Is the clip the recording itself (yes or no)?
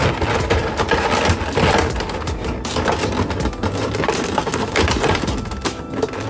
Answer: yes